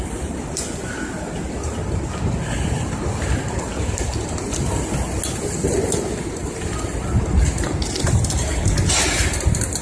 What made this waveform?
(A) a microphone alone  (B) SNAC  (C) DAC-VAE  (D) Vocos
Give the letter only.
A